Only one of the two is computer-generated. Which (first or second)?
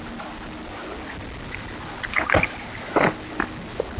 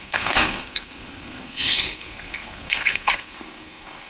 second